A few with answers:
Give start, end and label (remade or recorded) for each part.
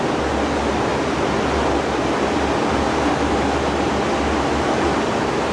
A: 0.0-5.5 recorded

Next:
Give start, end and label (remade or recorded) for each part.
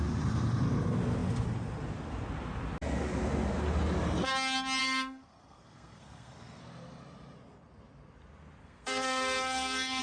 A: 0.0-4.8 recorded; 4.8-6.6 remade; 6.6-8.6 recorded; 8.6-10.0 remade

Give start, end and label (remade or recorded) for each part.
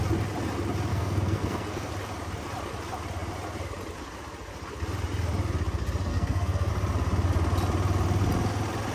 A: 0.0-0.9 recorded; 0.9-1.9 remade; 1.9-6.1 recorded; 6.1-6.7 remade; 6.7-8.9 recorded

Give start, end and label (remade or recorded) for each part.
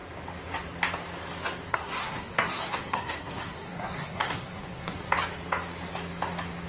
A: 0.0-1.7 recorded; 1.7-5.1 remade; 5.1-6.7 recorded